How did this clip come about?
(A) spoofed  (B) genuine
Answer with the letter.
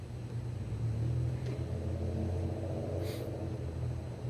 B